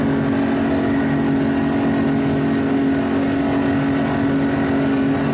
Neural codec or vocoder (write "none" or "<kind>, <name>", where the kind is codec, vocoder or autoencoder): none